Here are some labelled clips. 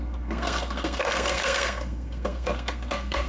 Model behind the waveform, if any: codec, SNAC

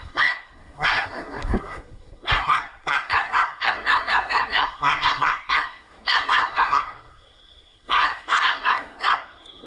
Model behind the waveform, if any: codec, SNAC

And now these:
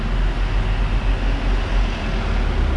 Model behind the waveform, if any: none